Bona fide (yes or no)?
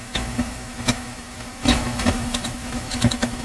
no